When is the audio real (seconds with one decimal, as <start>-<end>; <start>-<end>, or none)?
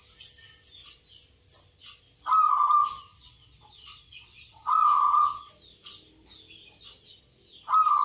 0.0-3.1; 5.5-8.0